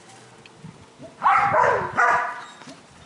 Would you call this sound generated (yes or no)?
no